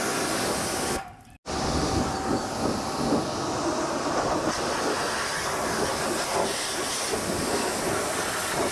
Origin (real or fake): real